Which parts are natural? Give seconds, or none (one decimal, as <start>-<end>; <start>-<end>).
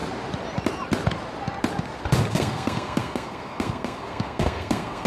0.0-2.3